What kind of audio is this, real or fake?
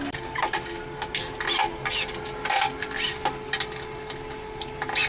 real